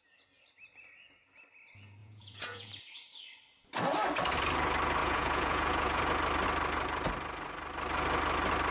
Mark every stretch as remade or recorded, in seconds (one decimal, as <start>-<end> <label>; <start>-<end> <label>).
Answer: 0.0-2.0 recorded; 2.0-2.7 remade; 2.7-5.0 recorded; 5.0-6.0 remade; 6.0-8.7 recorded